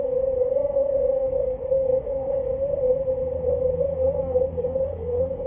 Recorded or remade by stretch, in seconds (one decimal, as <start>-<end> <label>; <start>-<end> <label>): 0.0-2.5 remade; 2.5-3.5 recorded; 3.5-5.5 remade